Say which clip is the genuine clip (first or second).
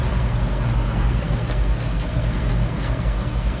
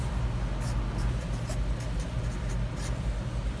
second